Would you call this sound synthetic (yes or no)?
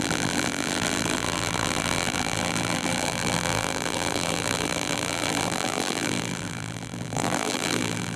yes